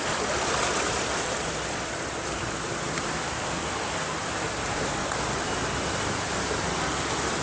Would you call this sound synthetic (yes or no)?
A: no